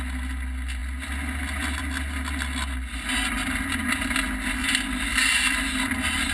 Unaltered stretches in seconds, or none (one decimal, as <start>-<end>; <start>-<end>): 0.0-6.3